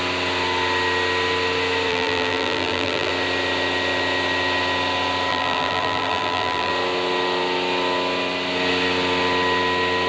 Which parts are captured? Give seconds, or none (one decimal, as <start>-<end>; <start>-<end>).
0.0-1.9; 3.1-5.3; 6.7-10.1